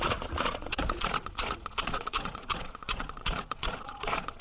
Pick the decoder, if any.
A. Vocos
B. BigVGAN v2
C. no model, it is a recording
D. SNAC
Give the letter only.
A